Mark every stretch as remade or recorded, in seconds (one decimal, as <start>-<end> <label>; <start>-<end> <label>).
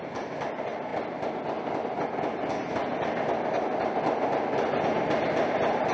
0.0-5.9 recorded